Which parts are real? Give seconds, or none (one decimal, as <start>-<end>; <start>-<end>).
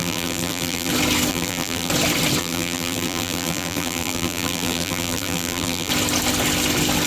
0.9-1.3; 1.9-2.4; 5.9-7.1